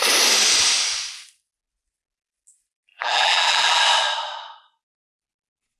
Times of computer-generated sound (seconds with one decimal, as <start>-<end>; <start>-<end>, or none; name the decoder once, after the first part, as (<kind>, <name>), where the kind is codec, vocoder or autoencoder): 2.9-3.8 (vocoder, BigVGAN v2)